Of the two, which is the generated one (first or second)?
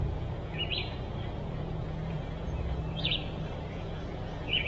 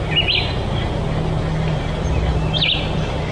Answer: first